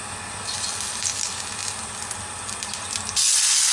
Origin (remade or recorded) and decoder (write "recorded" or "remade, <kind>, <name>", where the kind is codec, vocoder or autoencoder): recorded